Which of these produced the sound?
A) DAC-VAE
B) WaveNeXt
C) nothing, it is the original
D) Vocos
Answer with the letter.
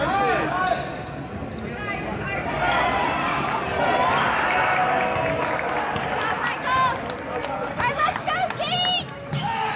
C